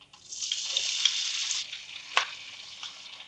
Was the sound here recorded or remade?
recorded